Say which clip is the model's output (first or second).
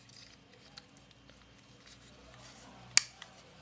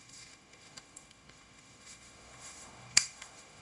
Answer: second